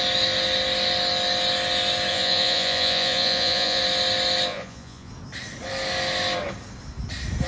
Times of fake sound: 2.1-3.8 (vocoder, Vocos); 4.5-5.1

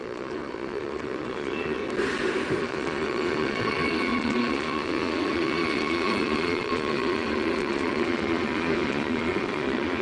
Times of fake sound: 0.0-1.8 (vocoder, Vocos); 2.6-10.0

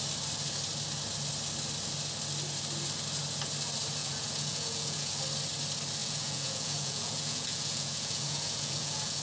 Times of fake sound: 4.0-5.2 (vocoder, Vocos); 6.0-9.2

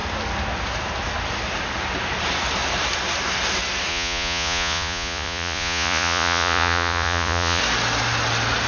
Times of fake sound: 3.9-7.6 (vocoder, Vocos)

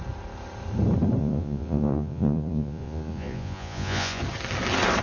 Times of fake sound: 1.2-4.2 (vocoder, Vocos)

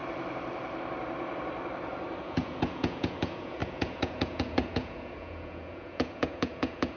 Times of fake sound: 2.2-7.0 (vocoder, Vocos)

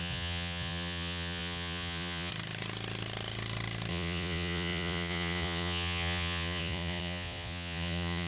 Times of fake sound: 0.0-2.3 (vocoder, Vocos); 3.9-8.3